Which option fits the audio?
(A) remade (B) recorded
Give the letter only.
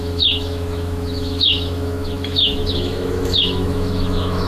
A